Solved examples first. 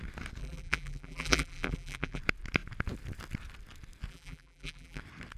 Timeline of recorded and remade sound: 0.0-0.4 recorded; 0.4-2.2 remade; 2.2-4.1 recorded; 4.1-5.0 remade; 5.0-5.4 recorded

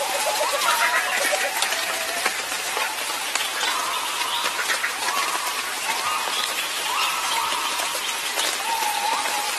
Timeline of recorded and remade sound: 0.0-3.9 remade; 3.9-4.9 recorded; 4.9-7.9 remade; 7.9-9.0 recorded; 9.0-9.6 remade

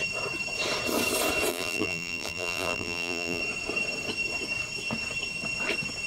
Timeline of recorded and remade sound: 0.0-1.5 recorded; 1.5-3.4 remade; 3.4-6.1 recorded

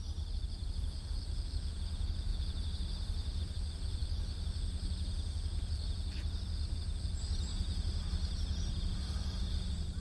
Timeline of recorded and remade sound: 0.0-2.3 remade; 2.3-3.4 recorded; 3.4-4.0 remade; 4.0-6.7 recorded; 6.7-10.0 remade

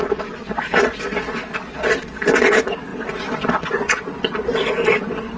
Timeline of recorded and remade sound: 0.0-5.4 recorded

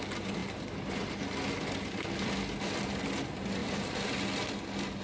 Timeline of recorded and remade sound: 0.0-5.0 recorded

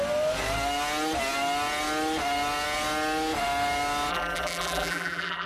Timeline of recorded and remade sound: 0.0-4.1 recorded; 4.1-5.5 remade

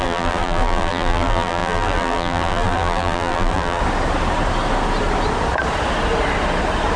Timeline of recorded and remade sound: 0.0-3.8 remade; 3.8-7.0 recorded